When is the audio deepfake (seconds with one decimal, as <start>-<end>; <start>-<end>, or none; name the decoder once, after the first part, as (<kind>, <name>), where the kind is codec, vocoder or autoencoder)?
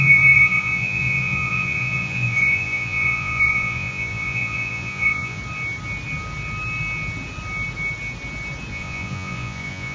0.0-5.4 (vocoder, Vocos); 8.7-9.9